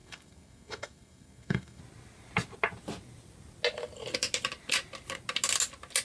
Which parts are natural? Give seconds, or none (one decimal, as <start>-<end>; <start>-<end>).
1.8-6.0